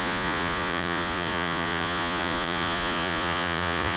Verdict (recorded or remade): remade